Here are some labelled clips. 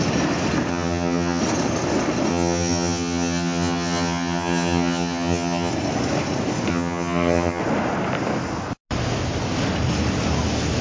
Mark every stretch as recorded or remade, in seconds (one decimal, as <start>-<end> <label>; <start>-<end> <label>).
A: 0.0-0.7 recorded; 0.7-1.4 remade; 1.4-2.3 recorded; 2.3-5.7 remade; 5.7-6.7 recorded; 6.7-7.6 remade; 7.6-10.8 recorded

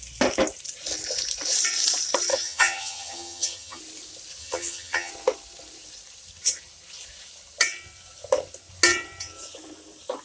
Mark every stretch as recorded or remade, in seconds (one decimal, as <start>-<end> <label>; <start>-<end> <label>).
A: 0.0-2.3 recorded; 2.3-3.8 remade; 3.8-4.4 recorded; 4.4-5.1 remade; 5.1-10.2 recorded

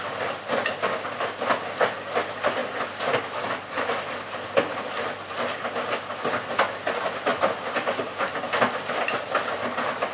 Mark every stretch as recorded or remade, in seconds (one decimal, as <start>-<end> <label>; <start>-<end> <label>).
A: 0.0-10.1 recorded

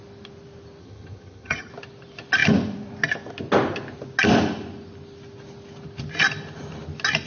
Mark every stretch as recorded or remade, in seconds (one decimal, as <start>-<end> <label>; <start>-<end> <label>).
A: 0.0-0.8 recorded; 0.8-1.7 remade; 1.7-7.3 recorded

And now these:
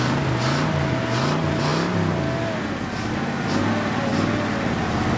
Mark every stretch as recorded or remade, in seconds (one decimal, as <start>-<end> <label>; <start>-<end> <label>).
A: 0.0-5.2 recorded